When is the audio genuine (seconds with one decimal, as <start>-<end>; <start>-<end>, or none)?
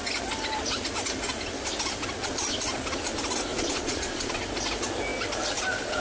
0.0-3.5; 4.4-6.0